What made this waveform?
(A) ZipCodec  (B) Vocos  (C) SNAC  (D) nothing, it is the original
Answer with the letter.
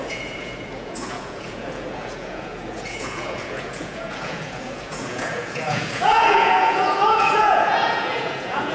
B